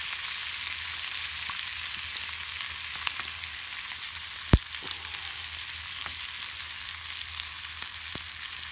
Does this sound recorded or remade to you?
recorded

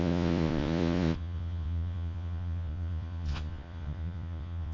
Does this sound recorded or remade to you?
remade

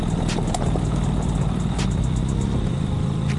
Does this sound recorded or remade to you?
recorded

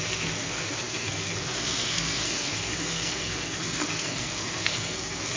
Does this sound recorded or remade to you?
remade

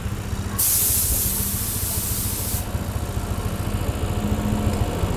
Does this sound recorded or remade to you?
recorded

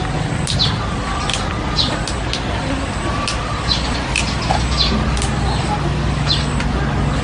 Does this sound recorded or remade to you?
recorded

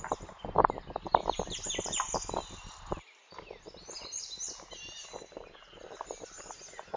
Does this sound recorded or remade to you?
recorded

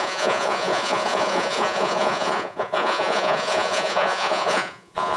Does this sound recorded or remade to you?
remade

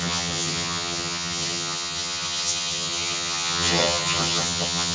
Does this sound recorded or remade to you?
remade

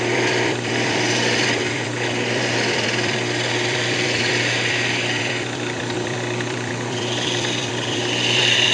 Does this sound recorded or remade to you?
remade